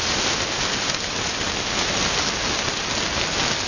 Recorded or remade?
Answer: recorded